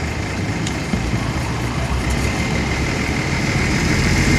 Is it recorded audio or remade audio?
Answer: remade